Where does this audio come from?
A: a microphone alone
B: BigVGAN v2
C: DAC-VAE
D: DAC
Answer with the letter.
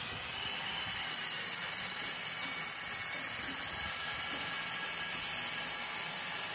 A